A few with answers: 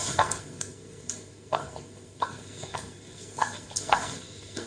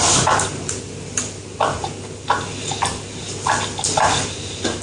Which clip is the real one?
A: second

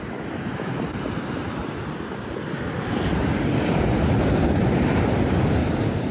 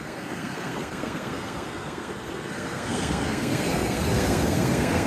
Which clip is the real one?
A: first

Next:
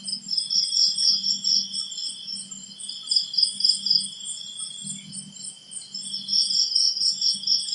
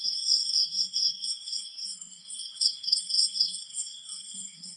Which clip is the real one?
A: first